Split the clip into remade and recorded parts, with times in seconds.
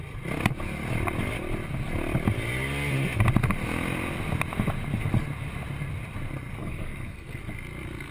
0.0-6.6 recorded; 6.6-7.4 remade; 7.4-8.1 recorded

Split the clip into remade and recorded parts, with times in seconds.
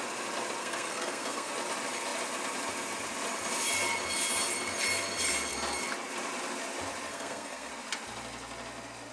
0.0-0.6 recorded; 0.6-1.5 remade; 1.5-7.1 recorded; 7.1-7.7 remade; 7.7-9.1 recorded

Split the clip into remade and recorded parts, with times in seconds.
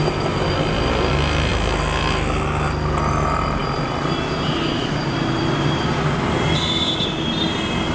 0.0-7.9 recorded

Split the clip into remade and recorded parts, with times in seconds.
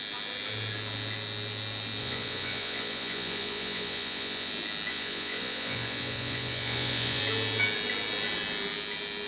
0.0-2.0 recorded; 2.0-4.5 remade; 4.5-4.9 recorded; 4.9-7.2 remade; 7.2-9.3 recorded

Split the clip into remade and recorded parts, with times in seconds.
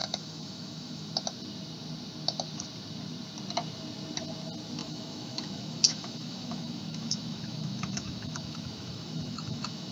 0.0-1.1 remade; 1.1-4.8 recorded; 4.8-9.9 remade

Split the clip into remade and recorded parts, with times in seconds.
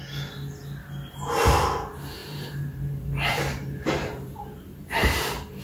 0.0-2.2 recorded; 2.2-5.6 remade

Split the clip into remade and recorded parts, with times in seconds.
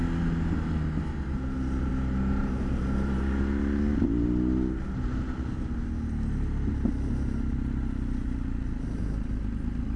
0.0-10.0 recorded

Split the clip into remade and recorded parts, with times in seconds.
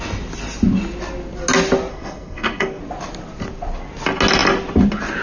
0.0-1.9 recorded; 1.9-2.8 remade; 2.8-5.2 recorded